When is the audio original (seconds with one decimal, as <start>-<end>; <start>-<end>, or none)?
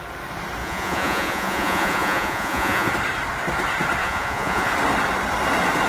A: 0.0-0.6; 2.9-4.0; 4.7-5.9